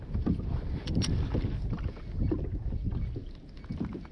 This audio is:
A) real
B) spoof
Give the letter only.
A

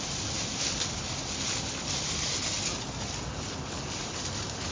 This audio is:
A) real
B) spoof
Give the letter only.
A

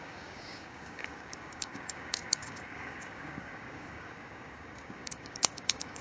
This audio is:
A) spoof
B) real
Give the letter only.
A